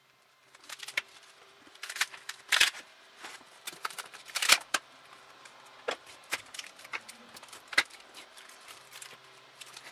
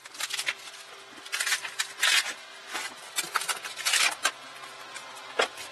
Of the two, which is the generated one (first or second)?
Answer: first